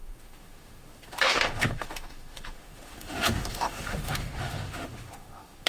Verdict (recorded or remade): remade